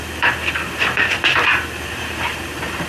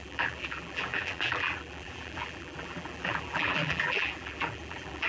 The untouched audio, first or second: first